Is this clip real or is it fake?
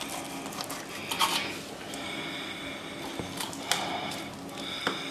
real